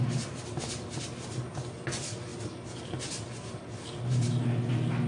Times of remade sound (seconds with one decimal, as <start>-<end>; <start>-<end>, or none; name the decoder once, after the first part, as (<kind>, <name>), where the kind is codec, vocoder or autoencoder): none